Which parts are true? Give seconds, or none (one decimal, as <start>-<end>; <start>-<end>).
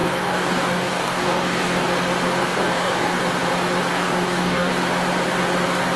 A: 1.8-2.4; 3.2-3.9; 4.7-6.0